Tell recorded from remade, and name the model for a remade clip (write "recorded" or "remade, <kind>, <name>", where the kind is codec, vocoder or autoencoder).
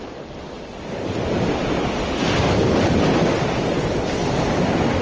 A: recorded